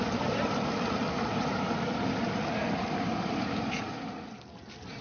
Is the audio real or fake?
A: real